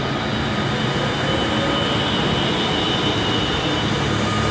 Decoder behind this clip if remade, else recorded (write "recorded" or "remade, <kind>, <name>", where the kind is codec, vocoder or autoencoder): recorded